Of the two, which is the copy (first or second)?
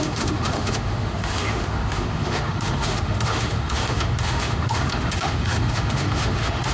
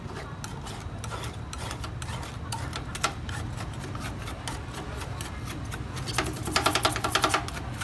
first